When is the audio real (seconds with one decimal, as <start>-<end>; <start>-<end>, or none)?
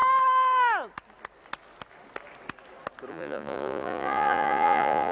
0.0-3.1